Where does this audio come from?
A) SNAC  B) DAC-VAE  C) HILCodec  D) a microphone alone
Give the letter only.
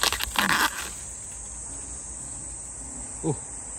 D